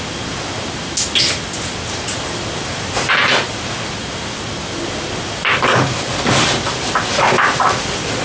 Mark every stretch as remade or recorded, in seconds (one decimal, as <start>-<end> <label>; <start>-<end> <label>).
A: 0.0-8.2 recorded